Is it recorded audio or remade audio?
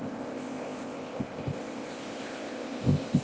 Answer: remade